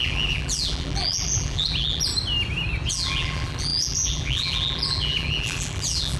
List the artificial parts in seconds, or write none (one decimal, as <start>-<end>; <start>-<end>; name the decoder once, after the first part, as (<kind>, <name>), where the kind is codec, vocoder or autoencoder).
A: 0.0-2.1 (vocoder, BigVGAN v2); 2.9-6.2